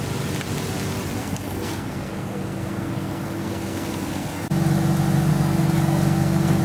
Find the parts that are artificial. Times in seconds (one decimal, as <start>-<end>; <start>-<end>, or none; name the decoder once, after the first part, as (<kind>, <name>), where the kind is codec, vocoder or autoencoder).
1.2-4.5 (codec, SNAC); 5.3-6.6